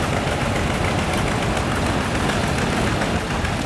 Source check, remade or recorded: recorded